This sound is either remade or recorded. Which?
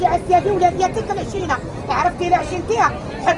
recorded